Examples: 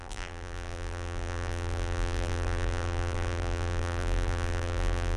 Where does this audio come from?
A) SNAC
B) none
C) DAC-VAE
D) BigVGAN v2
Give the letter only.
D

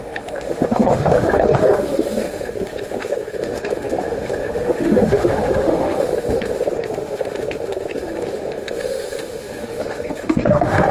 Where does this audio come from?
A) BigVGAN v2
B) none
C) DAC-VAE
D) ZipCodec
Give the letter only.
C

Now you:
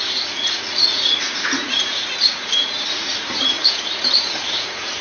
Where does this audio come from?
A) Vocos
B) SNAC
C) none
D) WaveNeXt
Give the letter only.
A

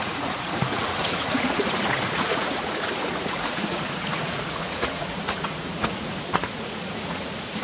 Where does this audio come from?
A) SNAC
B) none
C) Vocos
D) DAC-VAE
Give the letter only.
C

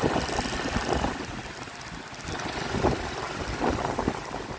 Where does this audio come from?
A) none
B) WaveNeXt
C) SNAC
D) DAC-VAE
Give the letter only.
A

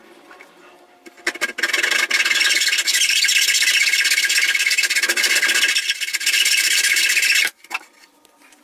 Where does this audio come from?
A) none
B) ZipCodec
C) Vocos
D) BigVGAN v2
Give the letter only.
A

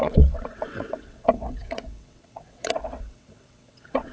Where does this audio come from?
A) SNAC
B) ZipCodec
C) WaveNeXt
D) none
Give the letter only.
C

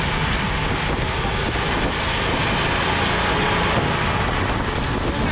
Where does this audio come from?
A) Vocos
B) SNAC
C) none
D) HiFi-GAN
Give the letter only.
C